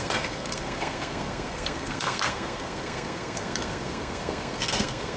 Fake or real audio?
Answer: fake